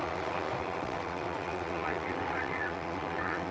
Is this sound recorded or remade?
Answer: remade